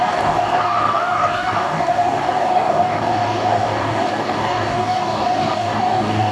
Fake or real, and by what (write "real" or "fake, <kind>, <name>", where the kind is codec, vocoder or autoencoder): fake, codec, DAC